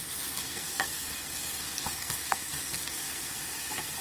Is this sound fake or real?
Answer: fake